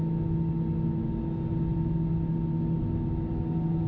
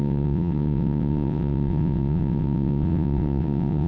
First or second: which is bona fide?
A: first